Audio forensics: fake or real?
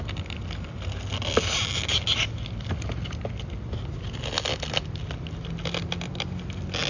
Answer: real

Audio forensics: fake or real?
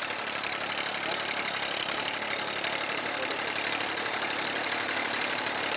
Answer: fake